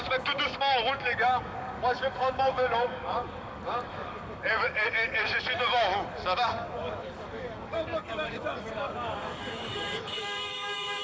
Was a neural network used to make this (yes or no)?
yes